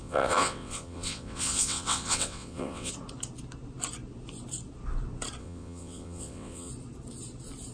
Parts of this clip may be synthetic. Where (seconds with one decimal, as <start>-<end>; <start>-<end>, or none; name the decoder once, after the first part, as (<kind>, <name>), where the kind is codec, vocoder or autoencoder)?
0.0-2.9 (vocoder, WaveNeXt); 5.4-6.7

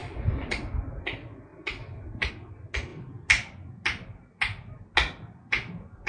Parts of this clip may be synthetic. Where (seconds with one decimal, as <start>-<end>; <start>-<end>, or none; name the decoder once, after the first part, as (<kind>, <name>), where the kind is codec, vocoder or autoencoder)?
1.5-2.3 (vocoder, BigVGAN v2)